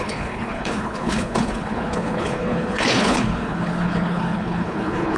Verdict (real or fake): fake